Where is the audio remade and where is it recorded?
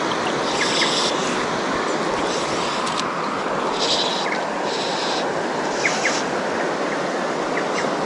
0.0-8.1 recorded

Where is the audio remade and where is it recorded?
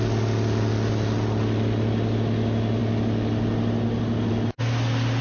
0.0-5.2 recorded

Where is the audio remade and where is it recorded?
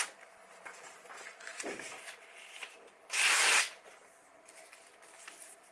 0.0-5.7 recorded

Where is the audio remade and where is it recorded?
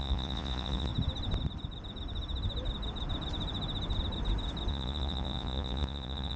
0.0-0.9 remade; 0.9-4.7 recorded; 4.7-6.4 remade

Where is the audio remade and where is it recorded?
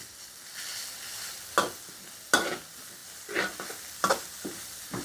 0.0-5.0 recorded